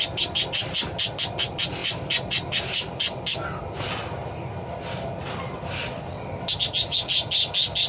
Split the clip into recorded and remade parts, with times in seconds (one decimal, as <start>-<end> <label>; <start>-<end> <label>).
0.0-7.9 recorded